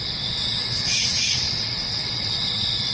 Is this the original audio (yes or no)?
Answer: no